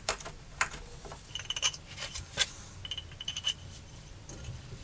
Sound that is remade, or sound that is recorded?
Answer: recorded